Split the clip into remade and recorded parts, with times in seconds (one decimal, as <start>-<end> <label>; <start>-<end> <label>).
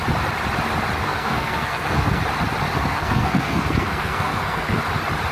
0.0-1.0 recorded; 1.0-2.2 remade; 2.2-2.8 recorded; 2.8-4.8 remade; 4.8-5.3 recorded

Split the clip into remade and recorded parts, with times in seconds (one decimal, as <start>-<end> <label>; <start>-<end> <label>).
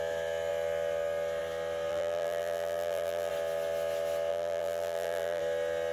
0.0-1.9 recorded; 1.9-3.3 remade; 3.3-4.3 recorded; 4.3-5.4 remade; 5.4-5.9 recorded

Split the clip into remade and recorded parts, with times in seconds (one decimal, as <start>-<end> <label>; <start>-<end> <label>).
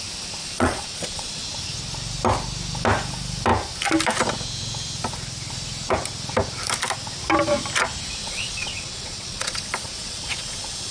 0.0-0.4 recorded; 0.4-1.4 remade; 1.4-8.2 recorded; 8.2-10.9 remade